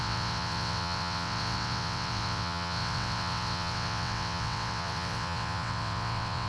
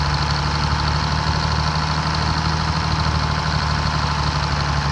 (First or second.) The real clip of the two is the second